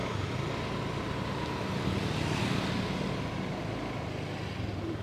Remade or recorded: recorded